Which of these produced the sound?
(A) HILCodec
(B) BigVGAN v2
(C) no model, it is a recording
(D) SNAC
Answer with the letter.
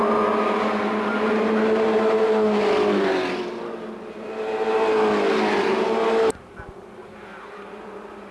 C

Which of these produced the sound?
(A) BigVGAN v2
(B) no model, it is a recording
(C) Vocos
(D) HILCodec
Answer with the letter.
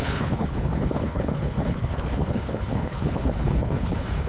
D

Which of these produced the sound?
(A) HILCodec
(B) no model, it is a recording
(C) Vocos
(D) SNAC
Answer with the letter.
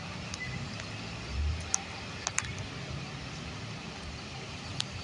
B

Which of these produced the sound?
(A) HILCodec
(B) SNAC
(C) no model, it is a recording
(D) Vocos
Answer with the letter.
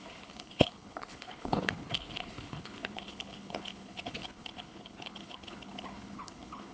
A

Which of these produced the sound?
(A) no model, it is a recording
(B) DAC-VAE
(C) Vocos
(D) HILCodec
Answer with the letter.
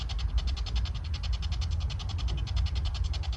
A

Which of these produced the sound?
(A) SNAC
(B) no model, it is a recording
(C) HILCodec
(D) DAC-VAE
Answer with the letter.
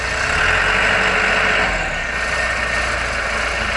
B